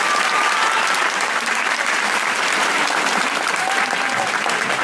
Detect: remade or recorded recorded